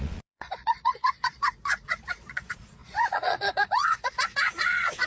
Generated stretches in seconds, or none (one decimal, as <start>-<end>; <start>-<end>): 0.0-5.1